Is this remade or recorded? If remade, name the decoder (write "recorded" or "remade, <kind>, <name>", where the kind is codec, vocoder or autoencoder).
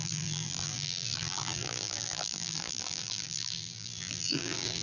remade, vocoder, BigVGAN v2